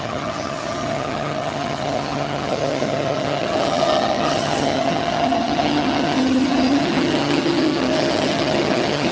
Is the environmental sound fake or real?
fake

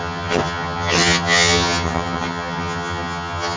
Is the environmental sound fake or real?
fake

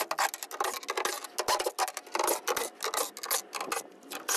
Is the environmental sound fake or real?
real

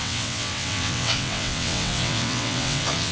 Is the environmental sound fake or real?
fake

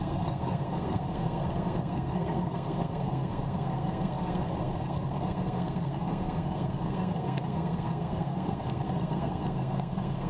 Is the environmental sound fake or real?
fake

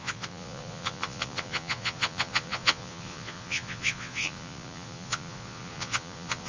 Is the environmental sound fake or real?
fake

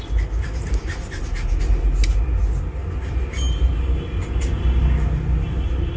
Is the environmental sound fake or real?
real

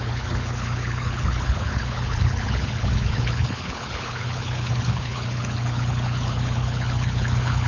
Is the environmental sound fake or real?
fake